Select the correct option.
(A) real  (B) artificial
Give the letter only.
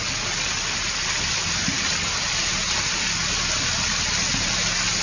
A